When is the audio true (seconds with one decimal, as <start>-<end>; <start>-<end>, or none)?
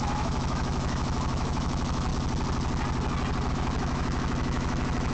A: 2.1-3.5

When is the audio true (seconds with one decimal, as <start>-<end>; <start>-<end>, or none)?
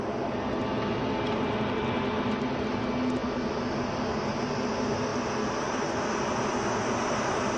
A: 0.0-7.6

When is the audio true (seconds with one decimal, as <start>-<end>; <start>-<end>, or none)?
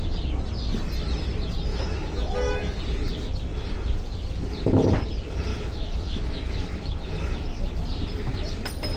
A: 0.0-1.7; 2.8-5.5; 7.6-9.0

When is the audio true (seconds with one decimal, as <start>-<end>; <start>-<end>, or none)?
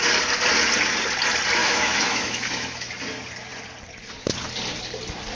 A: 0.0-1.6; 2.9-5.3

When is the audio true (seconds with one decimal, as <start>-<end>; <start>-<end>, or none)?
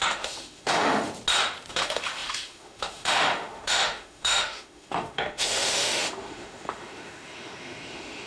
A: 1.1-1.7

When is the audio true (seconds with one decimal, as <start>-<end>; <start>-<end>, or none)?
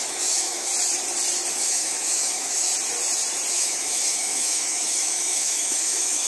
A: 0.7-1.5; 2.7-3.5